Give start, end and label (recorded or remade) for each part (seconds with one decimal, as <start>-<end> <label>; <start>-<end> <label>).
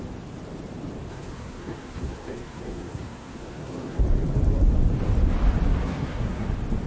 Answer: 0.0-1.1 recorded; 1.1-4.0 remade; 4.0-5.8 recorded; 5.8-6.5 remade; 6.5-6.9 recorded